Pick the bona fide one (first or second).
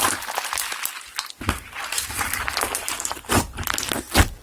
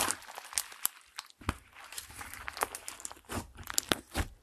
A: first